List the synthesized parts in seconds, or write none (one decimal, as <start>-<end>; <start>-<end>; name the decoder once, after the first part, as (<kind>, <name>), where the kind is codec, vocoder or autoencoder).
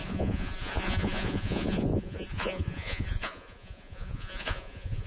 0.0-5.1 (vocoder, Vocos)